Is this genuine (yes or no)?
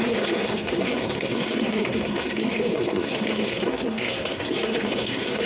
no